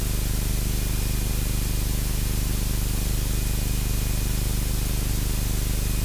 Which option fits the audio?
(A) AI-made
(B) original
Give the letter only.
B